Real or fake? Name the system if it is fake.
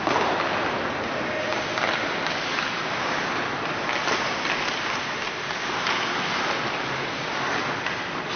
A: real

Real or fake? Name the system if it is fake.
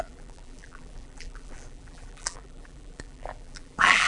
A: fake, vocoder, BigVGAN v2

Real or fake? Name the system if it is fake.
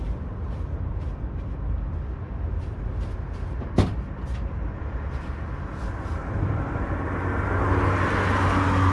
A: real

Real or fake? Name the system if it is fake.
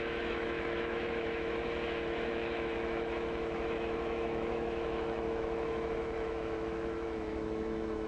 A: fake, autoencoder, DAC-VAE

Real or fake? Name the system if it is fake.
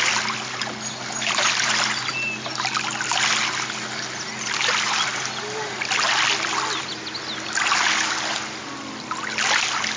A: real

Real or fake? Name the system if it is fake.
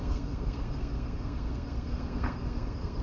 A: fake, codec, SNAC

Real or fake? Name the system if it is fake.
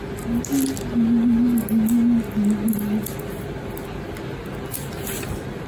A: real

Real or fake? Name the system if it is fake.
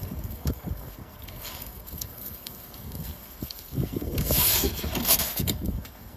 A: fake, codec, SNAC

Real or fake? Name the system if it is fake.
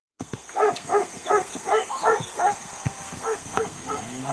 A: fake, codec, SNAC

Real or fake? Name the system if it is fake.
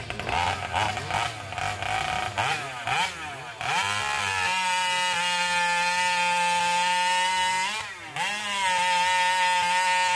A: real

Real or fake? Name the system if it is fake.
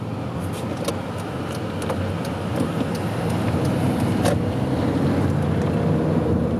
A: real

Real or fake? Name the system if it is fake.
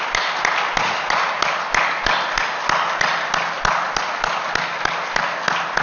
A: real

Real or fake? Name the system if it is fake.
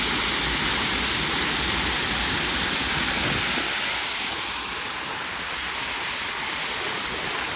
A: real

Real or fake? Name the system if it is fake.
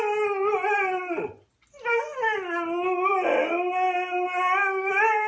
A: real